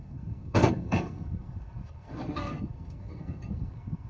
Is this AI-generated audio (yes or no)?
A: yes